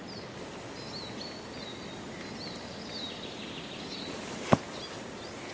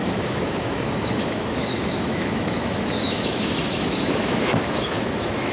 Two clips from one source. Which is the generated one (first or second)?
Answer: second